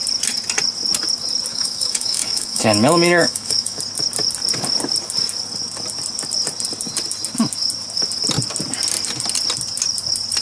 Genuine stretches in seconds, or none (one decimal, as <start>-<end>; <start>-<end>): 0.0-1.5; 3.8-10.4

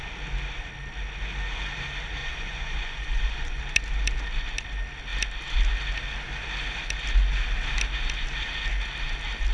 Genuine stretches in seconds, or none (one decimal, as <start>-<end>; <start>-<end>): 0.0-2.2; 3.6-9.5

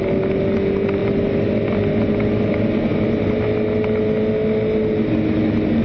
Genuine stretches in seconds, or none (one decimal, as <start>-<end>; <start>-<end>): 0.0-5.8

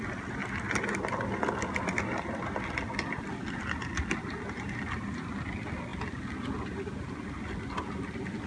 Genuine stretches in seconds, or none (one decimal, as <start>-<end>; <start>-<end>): 0.0-8.5

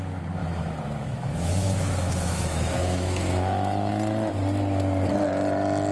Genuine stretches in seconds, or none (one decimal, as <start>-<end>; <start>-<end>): 0.0-0.4; 3.9-5.9